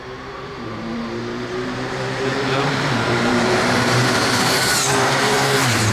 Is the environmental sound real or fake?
fake